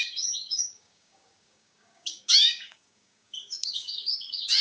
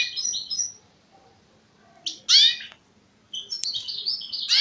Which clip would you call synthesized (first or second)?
first